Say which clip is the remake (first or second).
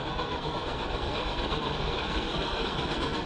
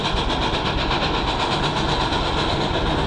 first